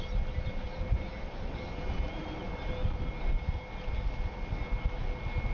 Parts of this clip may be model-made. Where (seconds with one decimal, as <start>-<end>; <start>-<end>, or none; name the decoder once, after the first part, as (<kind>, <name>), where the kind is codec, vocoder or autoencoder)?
none